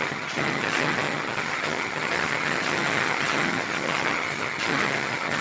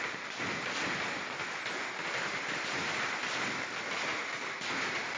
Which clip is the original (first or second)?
second